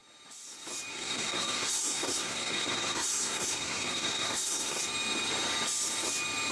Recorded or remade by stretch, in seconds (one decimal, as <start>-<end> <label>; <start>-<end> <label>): 0.0-0.9 recorded; 0.9-4.8 remade; 4.8-6.5 recorded